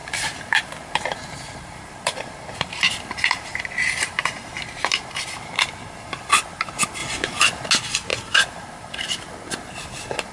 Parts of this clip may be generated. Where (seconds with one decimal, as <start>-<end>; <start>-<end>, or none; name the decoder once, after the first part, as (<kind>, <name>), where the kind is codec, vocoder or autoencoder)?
0.0-4.9 (vocoder, BigVGAN v2); 8.1-9.3